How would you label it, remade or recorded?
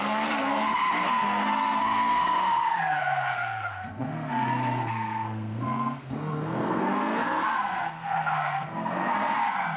remade